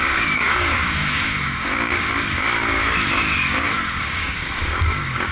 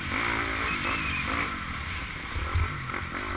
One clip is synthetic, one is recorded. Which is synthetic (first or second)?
first